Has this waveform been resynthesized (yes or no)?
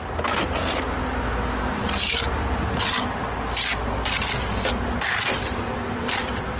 no